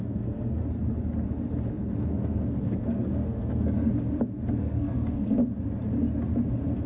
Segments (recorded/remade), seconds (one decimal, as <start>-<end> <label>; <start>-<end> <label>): 0.0-0.6 remade; 0.6-1.7 recorded; 1.7-3.9 remade; 3.9-4.6 recorded; 4.6-5.4 remade; 5.4-6.9 recorded